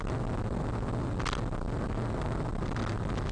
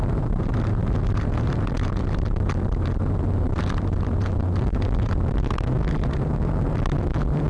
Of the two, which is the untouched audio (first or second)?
first